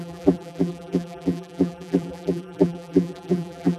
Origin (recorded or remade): remade